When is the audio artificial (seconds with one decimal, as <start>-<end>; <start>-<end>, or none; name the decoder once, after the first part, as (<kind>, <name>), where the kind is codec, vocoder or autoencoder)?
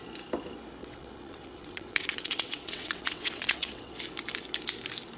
0.8-3.9 (vocoder, WaveNeXt)